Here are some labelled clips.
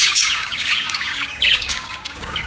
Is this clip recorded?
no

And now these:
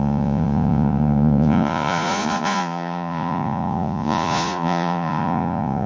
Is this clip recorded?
no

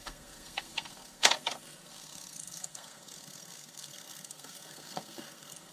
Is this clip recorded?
no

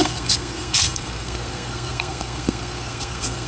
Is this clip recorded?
no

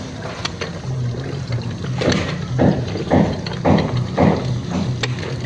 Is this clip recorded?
yes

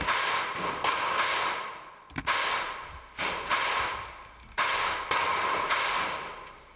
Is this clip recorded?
yes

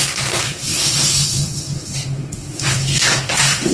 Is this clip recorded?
no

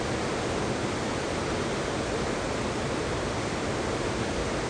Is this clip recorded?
yes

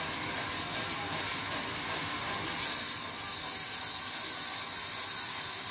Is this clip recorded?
yes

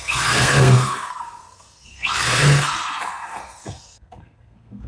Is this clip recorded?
no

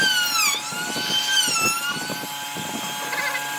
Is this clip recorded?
yes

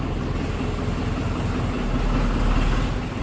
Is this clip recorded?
yes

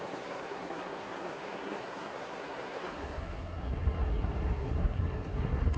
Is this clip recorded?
no